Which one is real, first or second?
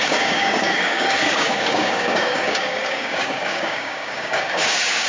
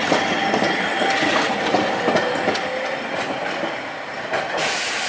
second